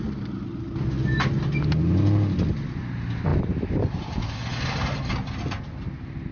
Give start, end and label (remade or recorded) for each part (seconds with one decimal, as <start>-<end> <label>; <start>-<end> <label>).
0.0-4.5 recorded; 4.5-5.1 remade; 5.1-6.3 recorded